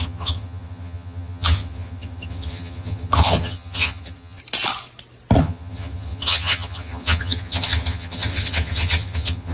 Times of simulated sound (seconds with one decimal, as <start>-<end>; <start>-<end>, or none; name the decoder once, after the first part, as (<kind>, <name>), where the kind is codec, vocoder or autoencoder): 0.0-4.4 (vocoder, HiFi-GAN); 5.4-9.5